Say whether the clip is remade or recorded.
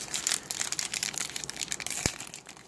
remade